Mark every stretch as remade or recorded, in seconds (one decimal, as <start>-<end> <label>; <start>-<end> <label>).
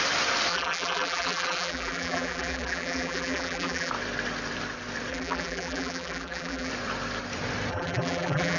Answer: 0.0-0.5 recorded; 0.5-3.9 remade; 3.9-5.1 recorded; 5.1-6.7 remade; 6.7-7.7 recorded; 7.7-8.6 remade